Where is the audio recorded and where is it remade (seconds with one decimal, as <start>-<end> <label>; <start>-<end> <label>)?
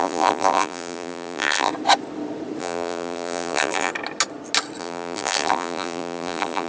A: 0.0-1.7 remade; 1.7-2.6 recorded; 2.6-3.9 remade; 3.9-4.8 recorded; 4.8-6.7 remade